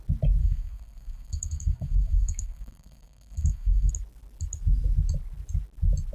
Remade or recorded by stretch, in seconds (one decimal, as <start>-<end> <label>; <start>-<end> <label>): 0.0-0.4 recorded; 0.4-3.9 remade; 3.9-6.1 recorded